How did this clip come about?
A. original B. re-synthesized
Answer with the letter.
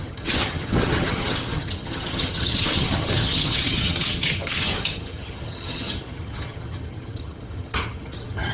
B